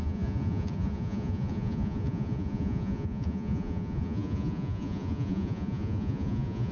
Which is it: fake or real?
fake